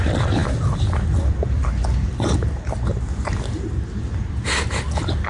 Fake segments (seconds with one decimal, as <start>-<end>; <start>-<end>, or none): none